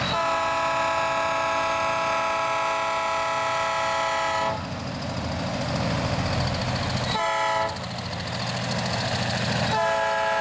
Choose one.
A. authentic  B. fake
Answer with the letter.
A